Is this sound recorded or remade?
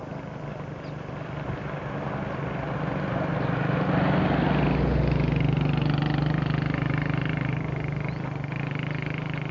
recorded